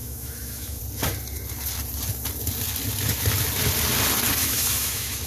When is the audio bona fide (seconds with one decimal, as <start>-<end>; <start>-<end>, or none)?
0.8-4.4